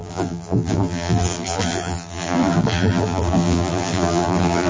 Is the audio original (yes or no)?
no